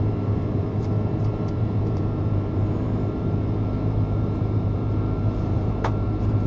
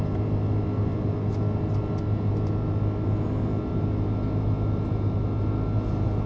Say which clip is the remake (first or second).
first